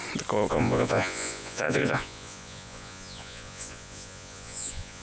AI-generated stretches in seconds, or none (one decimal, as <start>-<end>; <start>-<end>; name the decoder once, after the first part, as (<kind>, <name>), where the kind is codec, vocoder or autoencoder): 0.5-5.0 (vocoder, Vocos)